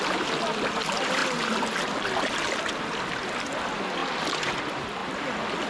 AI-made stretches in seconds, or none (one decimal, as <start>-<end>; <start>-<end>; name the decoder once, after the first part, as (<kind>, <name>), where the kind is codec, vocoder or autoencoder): none